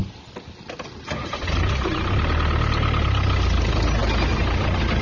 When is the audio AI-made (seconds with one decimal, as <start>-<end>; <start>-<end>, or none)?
none

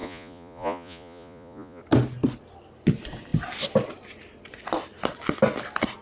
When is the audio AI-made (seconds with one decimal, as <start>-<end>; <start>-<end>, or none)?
0.0-1.8

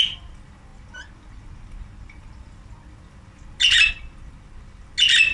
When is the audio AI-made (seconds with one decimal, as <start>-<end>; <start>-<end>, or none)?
none